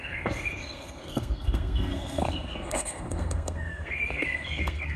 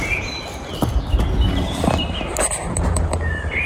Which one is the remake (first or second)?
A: first